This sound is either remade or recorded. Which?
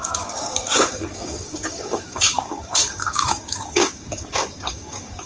remade